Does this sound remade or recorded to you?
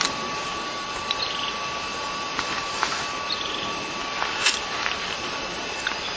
remade